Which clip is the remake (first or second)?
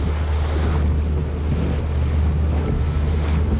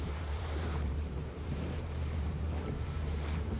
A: second